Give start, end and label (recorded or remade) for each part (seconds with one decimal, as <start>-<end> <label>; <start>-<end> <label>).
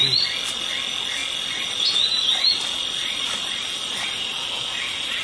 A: 0.0-5.2 recorded